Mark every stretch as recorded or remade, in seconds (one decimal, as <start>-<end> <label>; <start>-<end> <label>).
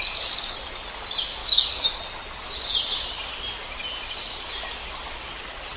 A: 0.0-1.4 recorded; 1.4-2.0 remade; 2.0-5.8 recorded